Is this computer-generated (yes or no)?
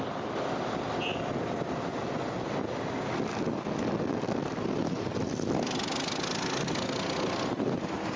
no